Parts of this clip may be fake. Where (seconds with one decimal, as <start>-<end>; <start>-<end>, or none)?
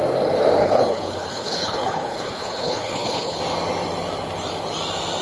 0.6-3.4